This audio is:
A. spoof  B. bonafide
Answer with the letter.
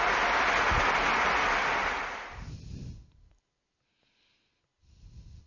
B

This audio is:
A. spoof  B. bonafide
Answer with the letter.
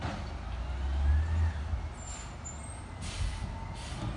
B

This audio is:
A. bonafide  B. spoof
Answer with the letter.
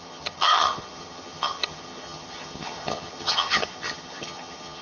B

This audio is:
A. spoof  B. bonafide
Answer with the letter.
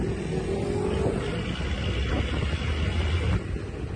B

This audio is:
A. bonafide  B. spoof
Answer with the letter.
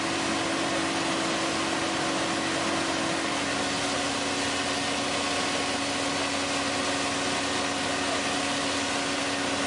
A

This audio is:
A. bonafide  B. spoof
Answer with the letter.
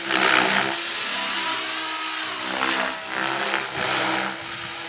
A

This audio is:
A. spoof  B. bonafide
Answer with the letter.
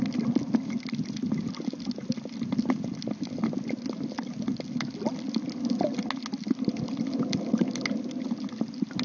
B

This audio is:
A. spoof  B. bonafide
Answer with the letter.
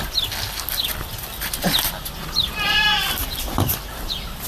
B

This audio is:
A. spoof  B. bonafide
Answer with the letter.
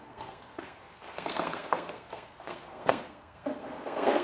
A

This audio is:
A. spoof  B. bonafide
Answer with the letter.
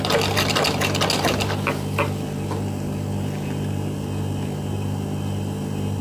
B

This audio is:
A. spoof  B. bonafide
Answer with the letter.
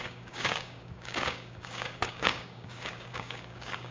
A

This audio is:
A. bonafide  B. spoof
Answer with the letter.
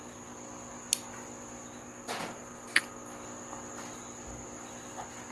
A